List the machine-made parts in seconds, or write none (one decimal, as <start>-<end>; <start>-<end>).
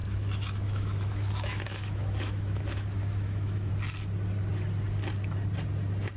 0.0-3.7